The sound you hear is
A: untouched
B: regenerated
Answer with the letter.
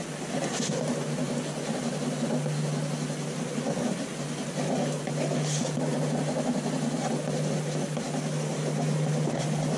A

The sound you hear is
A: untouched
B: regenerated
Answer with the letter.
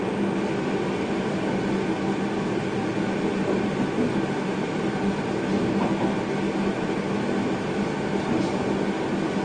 A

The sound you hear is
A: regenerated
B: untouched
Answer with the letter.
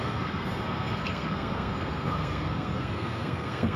A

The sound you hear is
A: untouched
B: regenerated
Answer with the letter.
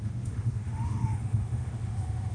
B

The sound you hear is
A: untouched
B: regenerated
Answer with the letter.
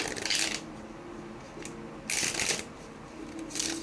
A